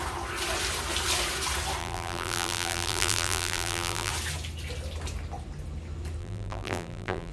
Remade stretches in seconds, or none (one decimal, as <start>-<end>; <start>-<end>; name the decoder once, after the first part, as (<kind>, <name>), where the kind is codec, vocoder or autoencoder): 1.8-4.1 (vocoder, BigVGAN v2); 6.2-7.3